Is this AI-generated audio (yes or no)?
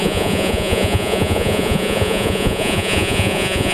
yes